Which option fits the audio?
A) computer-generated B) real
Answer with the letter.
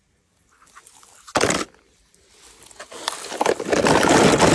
B